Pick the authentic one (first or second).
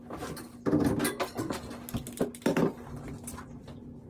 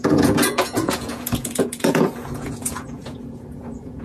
first